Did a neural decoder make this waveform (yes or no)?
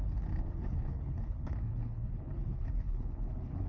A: yes